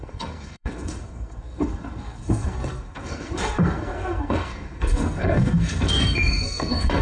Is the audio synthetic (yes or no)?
yes